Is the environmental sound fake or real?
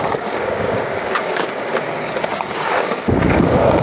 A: fake